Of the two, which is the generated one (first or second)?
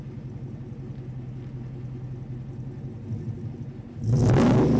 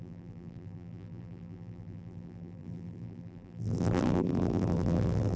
second